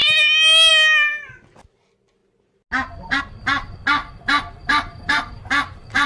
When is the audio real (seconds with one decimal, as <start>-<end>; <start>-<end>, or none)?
0.0-4.0